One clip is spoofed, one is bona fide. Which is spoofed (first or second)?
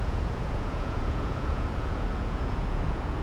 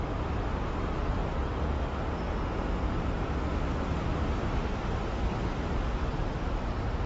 first